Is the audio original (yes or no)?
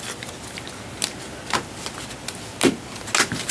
yes